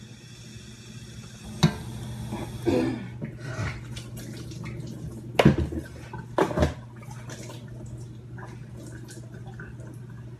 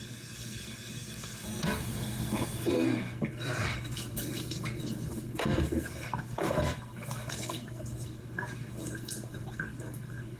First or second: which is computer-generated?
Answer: second